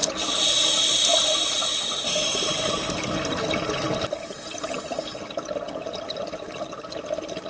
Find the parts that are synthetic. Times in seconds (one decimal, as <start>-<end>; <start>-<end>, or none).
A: none